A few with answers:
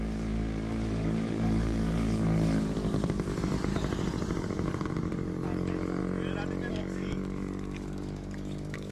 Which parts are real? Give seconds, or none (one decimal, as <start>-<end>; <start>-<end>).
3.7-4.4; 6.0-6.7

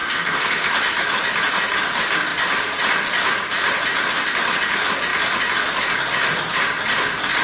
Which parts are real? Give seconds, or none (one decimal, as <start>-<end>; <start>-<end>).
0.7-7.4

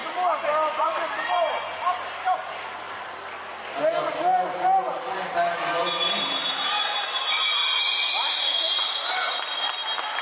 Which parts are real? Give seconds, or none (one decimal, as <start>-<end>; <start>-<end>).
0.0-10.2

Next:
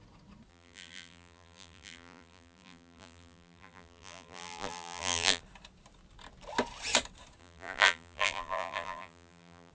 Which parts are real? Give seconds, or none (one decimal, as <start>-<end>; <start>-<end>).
0.0-0.5; 5.4-7.4

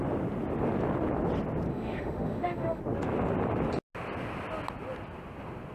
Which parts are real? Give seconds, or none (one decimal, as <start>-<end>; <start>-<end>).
0.0-1.7; 2.8-5.7

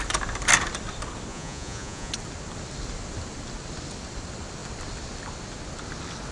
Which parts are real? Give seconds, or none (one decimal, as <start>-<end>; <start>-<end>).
0.0-1.3; 2.1-6.3

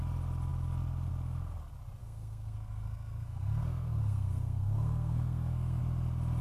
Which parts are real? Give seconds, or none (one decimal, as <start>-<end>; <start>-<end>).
0.0-2.0; 5.8-6.4